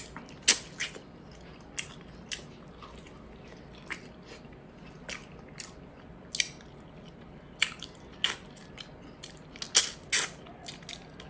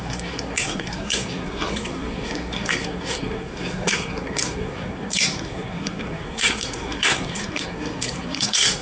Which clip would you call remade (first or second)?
second